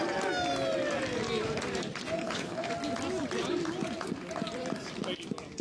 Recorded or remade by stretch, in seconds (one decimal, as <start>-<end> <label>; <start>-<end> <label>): 0.0-2.2 recorded; 2.2-2.7 remade; 2.7-5.6 recorded